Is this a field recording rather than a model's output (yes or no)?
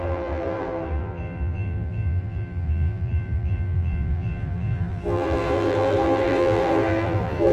no